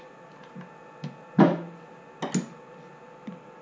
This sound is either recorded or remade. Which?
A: recorded